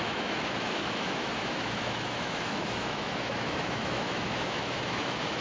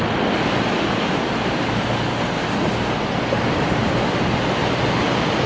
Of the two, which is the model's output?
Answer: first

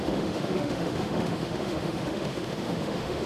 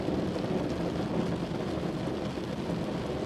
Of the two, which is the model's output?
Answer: first